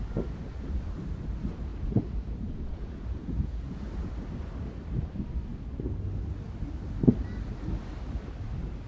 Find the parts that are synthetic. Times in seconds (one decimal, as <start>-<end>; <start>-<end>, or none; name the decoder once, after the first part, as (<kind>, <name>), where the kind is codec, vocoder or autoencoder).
1.7-4.1 (vocoder, Vocos)